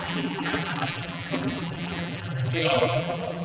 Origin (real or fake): fake